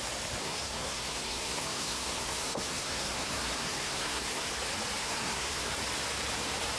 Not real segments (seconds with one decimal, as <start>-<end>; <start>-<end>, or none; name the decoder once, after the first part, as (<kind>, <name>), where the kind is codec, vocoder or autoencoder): 0.4-4.5 (codec, SNAC); 5.0-5.7